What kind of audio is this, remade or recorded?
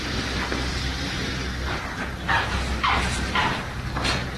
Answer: remade